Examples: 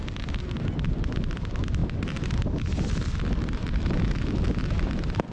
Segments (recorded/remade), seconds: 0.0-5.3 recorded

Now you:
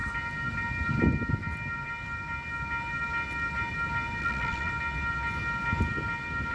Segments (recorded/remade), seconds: 0.0-4.2 recorded; 4.2-4.7 remade; 4.7-6.5 recorded

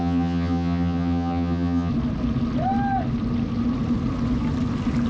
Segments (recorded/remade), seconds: 0.0-1.9 remade; 1.9-5.1 recorded